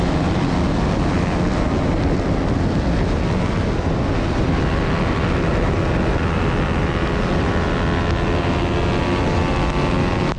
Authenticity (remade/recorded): recorded